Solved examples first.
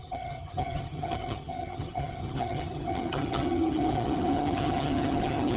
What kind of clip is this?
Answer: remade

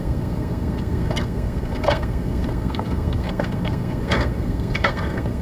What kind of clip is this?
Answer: remade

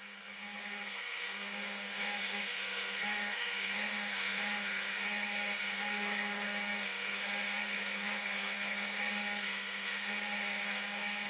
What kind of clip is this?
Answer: remade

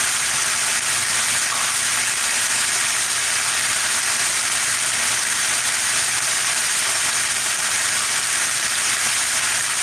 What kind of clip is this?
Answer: recorded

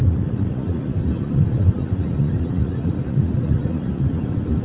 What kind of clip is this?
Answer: remade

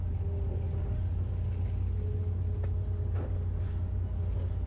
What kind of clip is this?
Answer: recorded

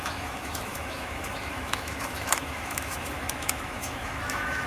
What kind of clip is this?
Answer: remade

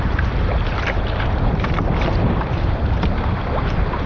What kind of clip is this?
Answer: remade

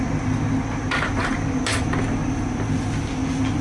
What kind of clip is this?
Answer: recorded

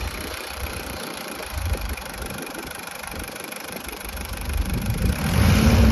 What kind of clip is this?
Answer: remade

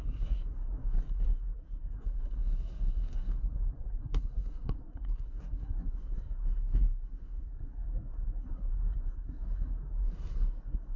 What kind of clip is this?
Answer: remade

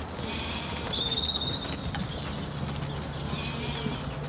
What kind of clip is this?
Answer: recorded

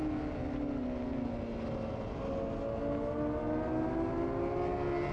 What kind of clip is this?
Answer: recorded